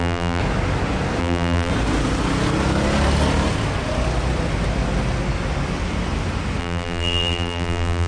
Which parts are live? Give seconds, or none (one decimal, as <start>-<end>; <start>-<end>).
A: 0.4-1.2; 1.7-6.6